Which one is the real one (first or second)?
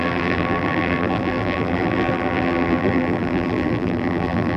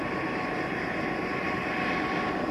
second